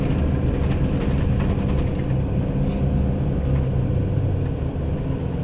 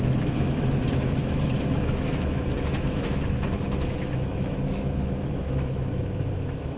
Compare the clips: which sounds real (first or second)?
first